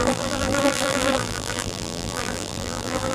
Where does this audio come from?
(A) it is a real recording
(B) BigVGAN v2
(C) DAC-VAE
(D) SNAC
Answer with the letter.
B